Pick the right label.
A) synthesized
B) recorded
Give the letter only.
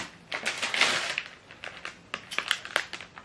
B